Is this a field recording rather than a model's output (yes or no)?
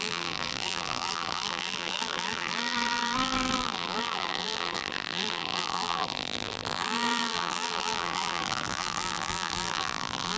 no